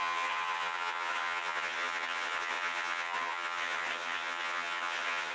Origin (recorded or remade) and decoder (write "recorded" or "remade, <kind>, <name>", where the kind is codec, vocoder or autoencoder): remade, vocoder, HiFi-GAN